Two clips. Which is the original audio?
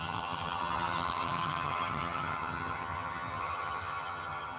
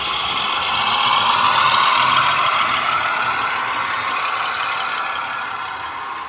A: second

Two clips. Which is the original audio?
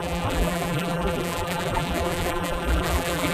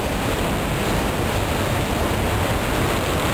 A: second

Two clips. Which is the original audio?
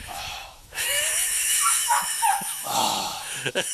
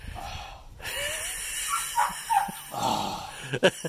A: second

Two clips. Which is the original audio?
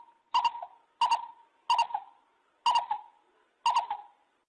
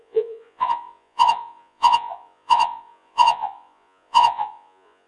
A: first